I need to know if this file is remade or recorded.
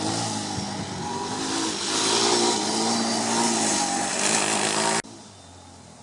recorded